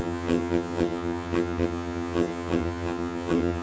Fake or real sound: fake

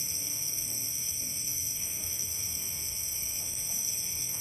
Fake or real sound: fake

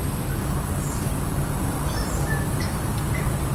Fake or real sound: fake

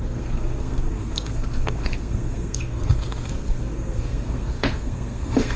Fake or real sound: fake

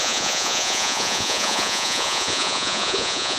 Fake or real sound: fake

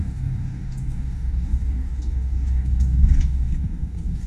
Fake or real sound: fake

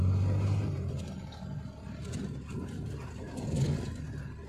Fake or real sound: real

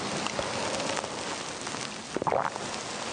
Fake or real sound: real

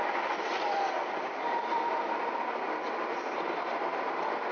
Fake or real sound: real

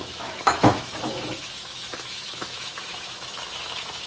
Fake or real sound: fake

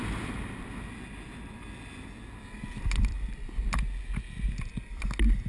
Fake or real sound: real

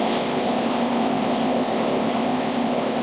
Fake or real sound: fake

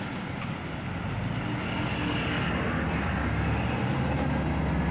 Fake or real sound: real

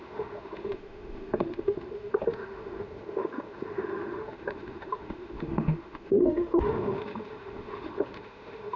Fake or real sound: fake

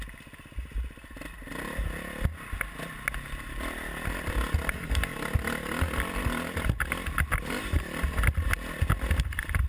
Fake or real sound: real